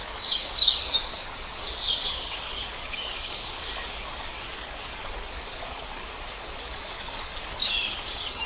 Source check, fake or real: fake